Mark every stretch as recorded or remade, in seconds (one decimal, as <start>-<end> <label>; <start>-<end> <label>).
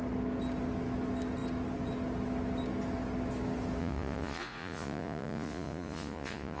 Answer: 0.0-3.8 recorded; 3.8-6.6 remade